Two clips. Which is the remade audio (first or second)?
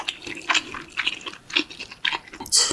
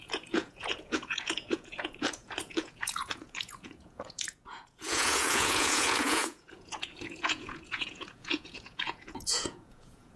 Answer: second